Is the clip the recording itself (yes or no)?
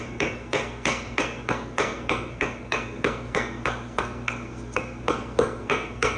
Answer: no